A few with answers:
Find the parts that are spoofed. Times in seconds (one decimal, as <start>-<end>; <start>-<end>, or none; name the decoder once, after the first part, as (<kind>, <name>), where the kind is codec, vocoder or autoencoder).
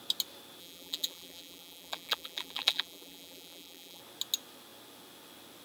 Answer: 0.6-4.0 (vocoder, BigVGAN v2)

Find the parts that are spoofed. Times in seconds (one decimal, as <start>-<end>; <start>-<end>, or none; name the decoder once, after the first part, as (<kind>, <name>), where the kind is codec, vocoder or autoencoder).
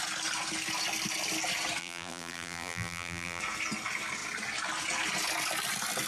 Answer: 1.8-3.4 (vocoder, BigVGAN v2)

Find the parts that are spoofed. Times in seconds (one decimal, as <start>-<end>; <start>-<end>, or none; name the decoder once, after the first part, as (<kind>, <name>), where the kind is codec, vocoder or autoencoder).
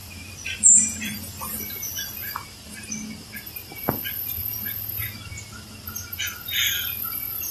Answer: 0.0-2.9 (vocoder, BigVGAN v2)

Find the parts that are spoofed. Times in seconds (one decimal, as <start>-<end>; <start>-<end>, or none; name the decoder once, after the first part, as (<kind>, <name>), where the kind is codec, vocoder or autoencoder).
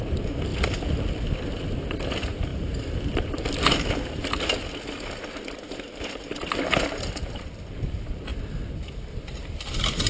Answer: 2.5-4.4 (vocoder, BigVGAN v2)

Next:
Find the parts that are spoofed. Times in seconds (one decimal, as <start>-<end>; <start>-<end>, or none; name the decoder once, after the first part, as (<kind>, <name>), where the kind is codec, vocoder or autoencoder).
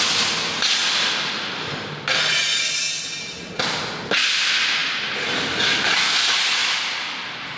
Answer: 0.8-3.5 (vocoder, BigVGAN v2); 6.6-7.6